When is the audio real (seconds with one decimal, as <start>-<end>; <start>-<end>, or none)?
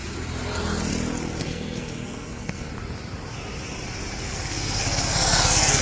0.0-1.4; 2.7-4.3